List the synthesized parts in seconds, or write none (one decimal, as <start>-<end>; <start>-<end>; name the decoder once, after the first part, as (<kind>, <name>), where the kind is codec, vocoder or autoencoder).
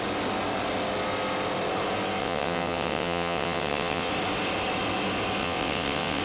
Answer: 2.2-4.1 (vocoder, WaveNeXt); 5.4-6.2